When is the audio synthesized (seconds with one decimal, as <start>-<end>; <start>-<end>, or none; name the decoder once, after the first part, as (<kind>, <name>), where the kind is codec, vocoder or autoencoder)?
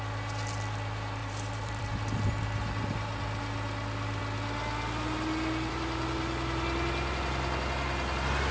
1.2-1.8 (vocoder, BigVGAN v2)